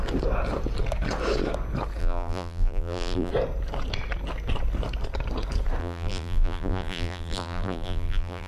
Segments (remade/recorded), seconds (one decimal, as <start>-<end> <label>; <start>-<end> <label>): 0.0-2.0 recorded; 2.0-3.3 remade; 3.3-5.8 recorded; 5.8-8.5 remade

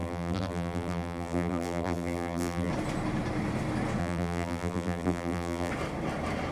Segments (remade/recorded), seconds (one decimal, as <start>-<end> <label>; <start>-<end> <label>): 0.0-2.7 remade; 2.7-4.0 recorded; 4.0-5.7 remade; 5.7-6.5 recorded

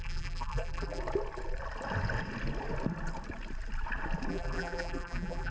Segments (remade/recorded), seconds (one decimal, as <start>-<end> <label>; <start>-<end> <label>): 0.0-1.0 remade; 1.0-4.3 recorded; 4.3-5.5 remade